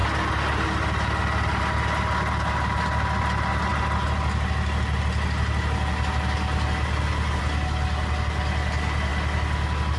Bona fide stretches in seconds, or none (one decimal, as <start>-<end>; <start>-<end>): 0.0-10.0